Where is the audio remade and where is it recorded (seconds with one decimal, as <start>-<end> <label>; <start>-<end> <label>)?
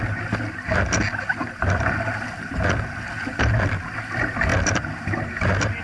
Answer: 0.0-5.8 recorded